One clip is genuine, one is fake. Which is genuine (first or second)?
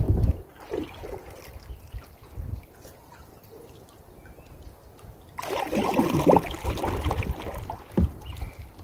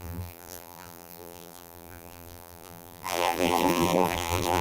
first